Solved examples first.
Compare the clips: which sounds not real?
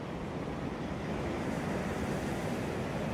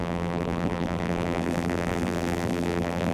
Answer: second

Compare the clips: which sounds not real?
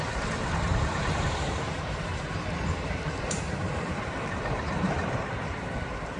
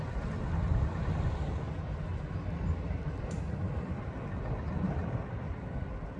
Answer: first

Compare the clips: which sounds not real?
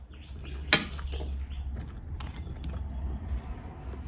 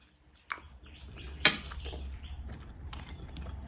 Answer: second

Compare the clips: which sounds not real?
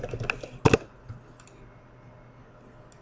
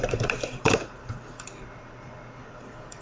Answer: second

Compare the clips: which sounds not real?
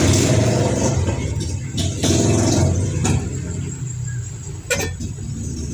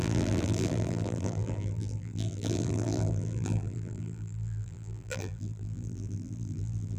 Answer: second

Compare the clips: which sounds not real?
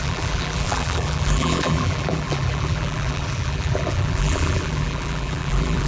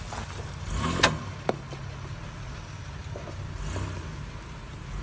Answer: first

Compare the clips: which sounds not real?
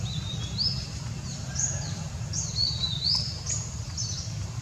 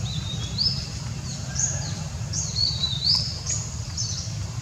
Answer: second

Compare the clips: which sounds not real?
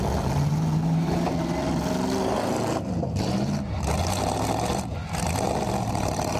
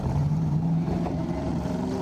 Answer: second